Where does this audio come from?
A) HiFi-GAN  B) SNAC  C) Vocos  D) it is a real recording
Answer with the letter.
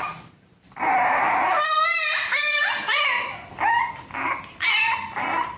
D